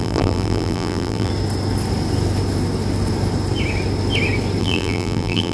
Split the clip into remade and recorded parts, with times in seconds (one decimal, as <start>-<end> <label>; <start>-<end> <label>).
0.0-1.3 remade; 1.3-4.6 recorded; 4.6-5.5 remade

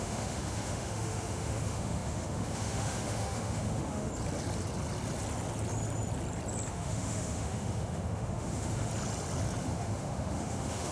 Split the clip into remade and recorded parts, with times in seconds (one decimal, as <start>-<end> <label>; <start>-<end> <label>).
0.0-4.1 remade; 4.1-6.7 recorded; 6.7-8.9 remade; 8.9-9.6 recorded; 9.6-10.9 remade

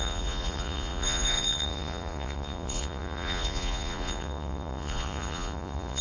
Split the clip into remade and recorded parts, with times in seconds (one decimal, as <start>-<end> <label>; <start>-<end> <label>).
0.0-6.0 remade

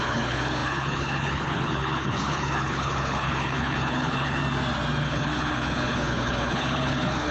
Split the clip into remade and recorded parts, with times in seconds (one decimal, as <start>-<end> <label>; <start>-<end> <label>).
0.0-4.4 remade; 4.4-5.0 recorded; 5.0-7.3 remade